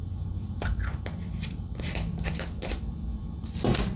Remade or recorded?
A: remade